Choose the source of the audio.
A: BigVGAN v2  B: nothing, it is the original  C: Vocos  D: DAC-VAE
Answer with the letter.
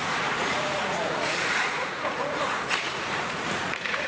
C